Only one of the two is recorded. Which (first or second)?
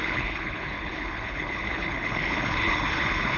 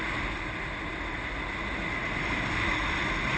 second